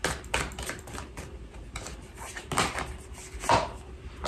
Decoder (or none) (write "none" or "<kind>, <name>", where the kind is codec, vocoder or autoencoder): none